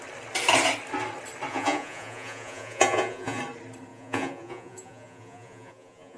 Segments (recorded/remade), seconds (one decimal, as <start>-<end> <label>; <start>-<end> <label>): 0.0-1.5 recorded; 1.5-3.4 remade; 3.4-3.9 recorded; 3.9-6.2 remade